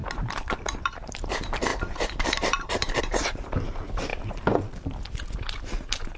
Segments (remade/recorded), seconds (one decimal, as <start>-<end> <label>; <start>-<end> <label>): 0.0-1.2 remade; 1.2-1.7 recorded; 1.7-3.0 remade; 3.0-6.2 recorded